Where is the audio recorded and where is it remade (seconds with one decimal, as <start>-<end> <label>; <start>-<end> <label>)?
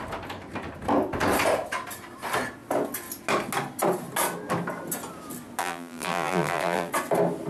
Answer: 0.0-5.6 recorded; 5.6-6.9 remade; 6.9-7.5 recorded